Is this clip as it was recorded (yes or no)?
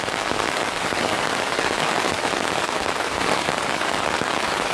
no